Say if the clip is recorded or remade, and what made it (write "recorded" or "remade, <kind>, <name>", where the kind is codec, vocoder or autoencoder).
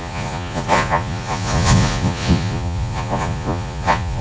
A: remade, vocoder, Vocos